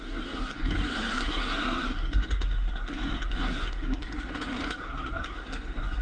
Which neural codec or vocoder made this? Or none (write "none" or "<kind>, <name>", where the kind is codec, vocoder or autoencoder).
codec, SNAC